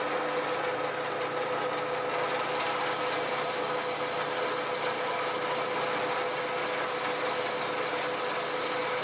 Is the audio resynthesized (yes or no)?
no